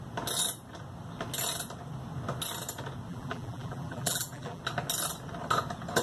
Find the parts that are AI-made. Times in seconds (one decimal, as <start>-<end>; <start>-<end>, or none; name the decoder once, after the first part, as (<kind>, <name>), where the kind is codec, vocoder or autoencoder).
3.1-4.6 (vocoder, BigVGAN v2)